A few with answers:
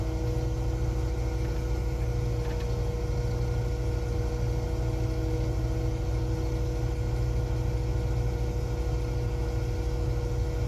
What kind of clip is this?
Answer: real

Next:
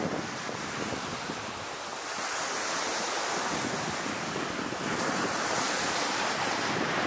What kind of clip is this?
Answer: real